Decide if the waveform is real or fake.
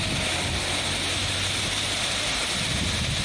real